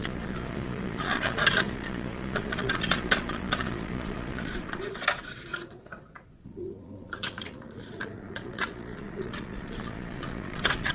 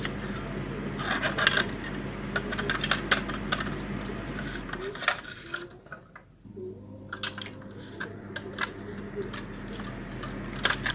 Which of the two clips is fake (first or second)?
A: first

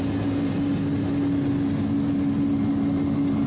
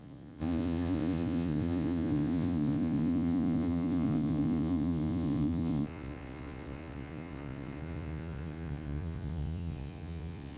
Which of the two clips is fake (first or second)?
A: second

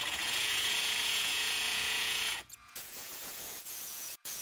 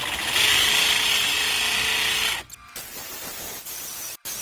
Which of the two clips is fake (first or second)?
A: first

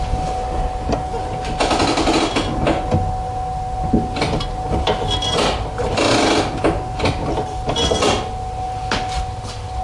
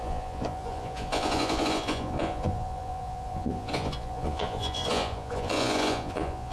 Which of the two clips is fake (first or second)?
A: second